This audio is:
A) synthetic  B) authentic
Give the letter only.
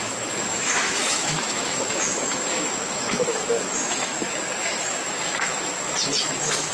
A